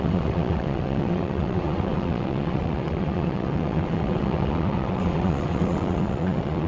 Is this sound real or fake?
fake